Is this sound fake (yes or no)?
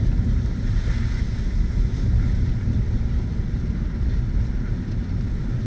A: no